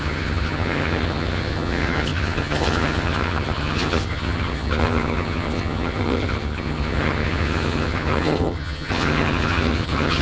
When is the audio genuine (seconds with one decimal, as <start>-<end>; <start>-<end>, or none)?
none